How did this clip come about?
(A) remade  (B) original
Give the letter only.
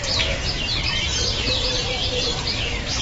B